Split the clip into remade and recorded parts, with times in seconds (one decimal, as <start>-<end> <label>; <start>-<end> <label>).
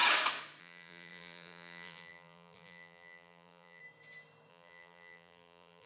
0.0-0.6 recorded; 0.6-3.8 remade; 3.8-4.5 recorded; 4.5-5.9 remade